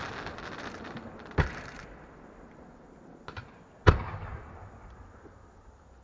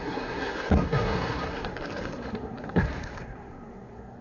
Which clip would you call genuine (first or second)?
first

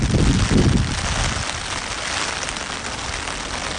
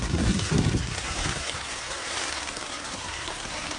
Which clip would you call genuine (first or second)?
first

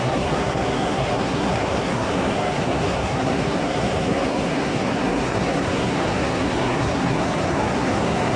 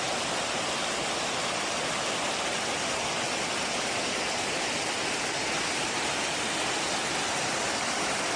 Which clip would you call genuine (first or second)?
second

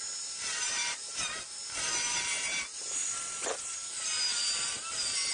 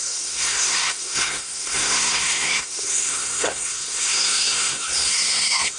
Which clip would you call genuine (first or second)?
first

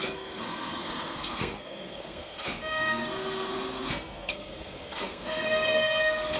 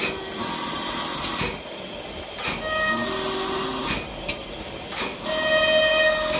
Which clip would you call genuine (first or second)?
second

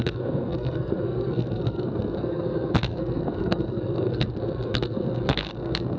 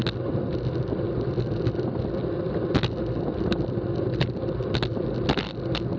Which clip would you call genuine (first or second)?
second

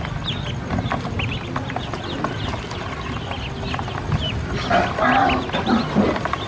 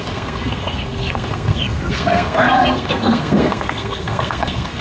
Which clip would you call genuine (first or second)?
first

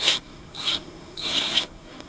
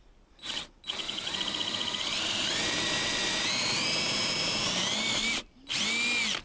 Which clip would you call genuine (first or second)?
second